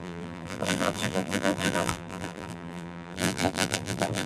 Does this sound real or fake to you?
fake